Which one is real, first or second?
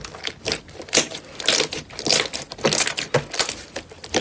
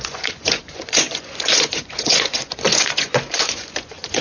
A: first